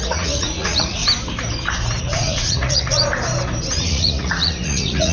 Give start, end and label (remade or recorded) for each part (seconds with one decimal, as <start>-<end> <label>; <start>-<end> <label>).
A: 0.0-1.0 remade; 1.0-2.0 recorded; 2.0-3.0 remade; 3.0-3.9 recorded; 3.9-5.1 remade